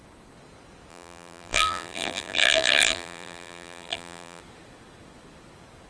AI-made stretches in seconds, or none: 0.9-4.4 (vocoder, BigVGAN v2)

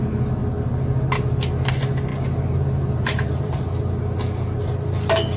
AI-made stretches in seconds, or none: 2.1-3.6 (vocoder, BigVGAN v2)